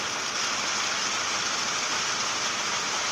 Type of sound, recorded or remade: recorded